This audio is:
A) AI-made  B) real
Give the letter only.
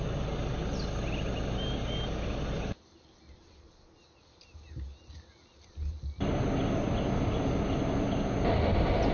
B